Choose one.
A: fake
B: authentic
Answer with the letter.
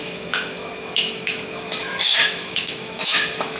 A